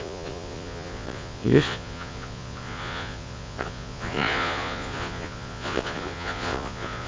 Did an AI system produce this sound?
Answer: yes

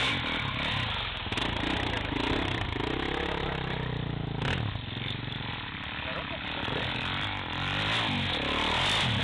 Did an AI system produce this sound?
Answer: no